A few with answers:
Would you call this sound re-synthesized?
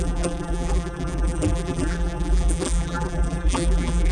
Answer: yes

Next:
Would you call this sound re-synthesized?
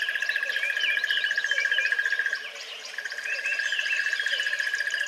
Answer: yes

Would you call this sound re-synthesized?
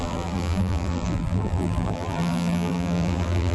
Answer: yes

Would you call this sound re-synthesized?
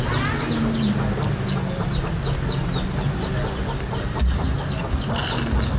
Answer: no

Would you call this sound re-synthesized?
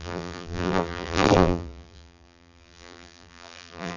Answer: yes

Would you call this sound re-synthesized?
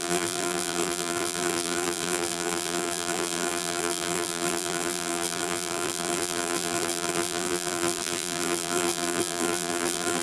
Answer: yes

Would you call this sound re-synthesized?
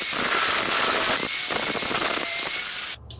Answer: no